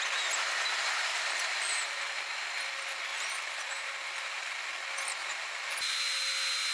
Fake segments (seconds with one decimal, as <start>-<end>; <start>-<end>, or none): 1.1-2.2; 3.1-4.6; 5.2-5.8